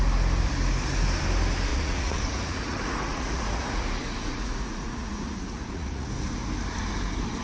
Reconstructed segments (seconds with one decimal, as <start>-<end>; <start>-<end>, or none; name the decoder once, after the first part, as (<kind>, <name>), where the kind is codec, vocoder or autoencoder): 1.7-6.1 (vocoder, Vocos)